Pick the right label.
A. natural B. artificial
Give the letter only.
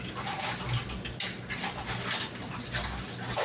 A